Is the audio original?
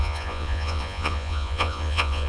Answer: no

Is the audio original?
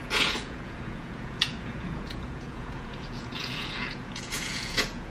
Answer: no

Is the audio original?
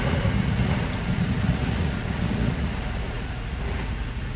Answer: no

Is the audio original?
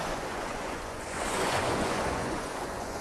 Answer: no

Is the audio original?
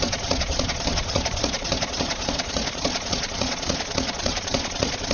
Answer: no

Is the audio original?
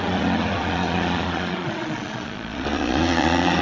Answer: no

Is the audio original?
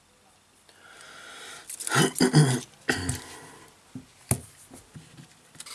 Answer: yes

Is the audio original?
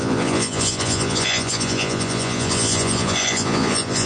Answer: no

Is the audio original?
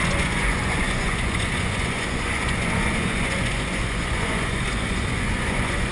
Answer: no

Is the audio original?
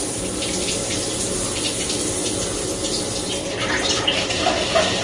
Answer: yes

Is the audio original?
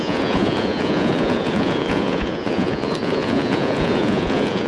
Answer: no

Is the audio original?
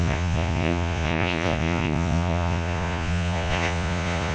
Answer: no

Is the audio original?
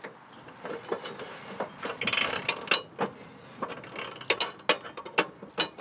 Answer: yes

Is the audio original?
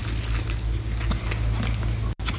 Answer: yes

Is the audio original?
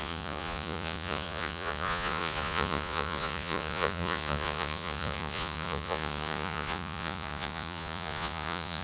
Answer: no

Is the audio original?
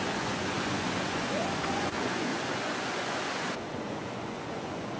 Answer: no